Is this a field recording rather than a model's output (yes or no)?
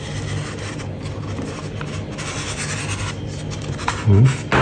yes